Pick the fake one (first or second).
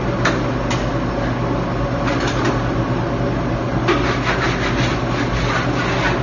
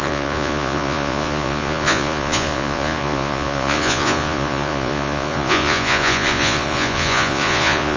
second